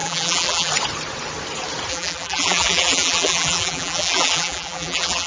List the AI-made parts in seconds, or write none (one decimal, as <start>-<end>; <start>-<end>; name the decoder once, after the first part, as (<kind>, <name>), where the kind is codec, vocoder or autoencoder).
0.0-0.7 (vocoder, BigVGAN v2); 1.9-5.3